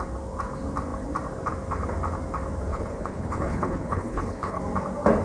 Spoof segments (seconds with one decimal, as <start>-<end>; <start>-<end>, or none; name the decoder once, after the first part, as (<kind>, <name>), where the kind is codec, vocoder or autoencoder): 2.7-4.6 (codec, HILCodec)

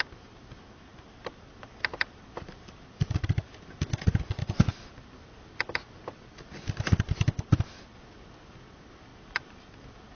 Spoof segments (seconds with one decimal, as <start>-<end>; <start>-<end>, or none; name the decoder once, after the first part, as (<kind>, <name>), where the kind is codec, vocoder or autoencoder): 0.9-1.5 (vocoder, BigVGAN v2); 1.9-4.2; 9.1-9.7

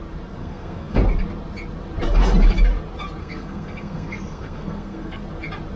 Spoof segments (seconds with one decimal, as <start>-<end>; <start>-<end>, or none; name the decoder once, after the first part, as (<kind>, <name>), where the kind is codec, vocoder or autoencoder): 0.4-1.0 (codec, SNAC); 3.2-5.2